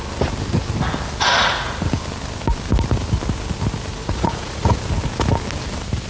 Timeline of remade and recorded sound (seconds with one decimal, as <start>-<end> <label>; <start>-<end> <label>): 0.0-1.4 recorded; 1.4-1.9 remade; 1.9-4.0 recorded; 4.0-4.8 remade; 4.8-6.1 recorded